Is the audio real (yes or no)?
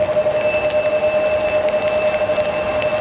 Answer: yes